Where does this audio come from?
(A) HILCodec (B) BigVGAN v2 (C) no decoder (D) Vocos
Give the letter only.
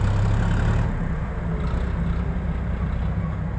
C